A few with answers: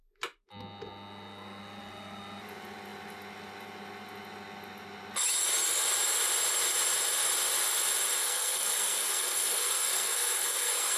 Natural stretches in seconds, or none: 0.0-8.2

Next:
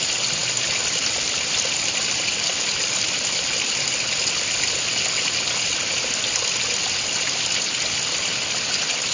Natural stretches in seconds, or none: 0.0-9.1

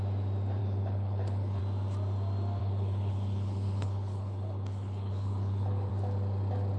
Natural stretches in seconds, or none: 0.0-0.6; 1.6-2.6; 5.9-6.8

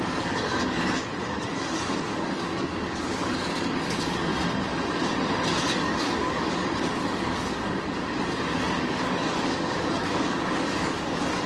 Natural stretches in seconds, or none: 4.3-5.6